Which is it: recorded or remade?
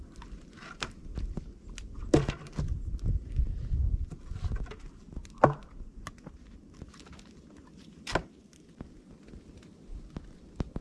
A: recorded